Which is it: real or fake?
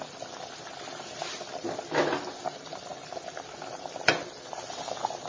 real